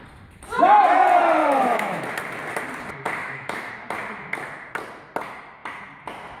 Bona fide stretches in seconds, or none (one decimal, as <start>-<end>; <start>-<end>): 0.0-1.4; 2.0-3.2; 3.7-6.4